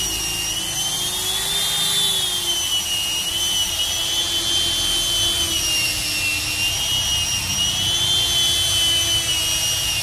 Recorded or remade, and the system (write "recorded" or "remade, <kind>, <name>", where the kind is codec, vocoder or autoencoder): recorded